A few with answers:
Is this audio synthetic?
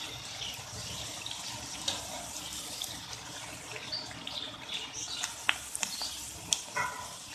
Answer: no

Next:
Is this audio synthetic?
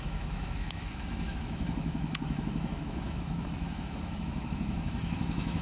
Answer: yes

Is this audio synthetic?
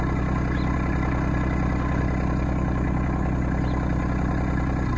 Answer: no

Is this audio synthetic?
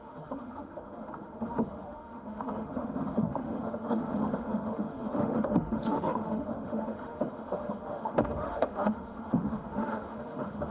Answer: yes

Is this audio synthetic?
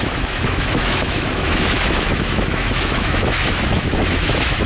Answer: yes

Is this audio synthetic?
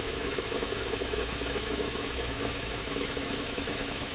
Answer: yes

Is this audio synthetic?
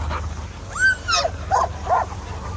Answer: no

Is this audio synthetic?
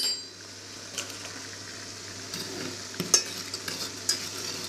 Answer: no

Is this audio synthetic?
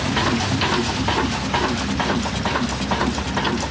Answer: no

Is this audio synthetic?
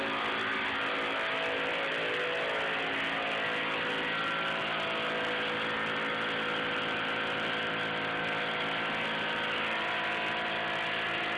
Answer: no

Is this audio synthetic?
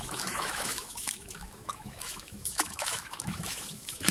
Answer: yes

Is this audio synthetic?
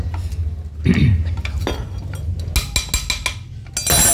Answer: no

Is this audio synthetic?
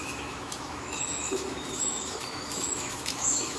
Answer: yes